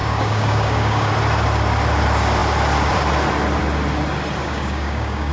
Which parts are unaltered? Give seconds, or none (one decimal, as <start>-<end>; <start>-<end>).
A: 1.1-4.4